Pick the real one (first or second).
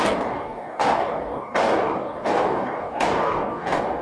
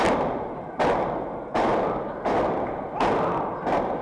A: second